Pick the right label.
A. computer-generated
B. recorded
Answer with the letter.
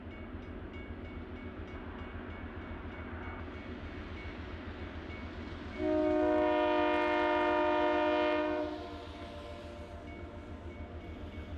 B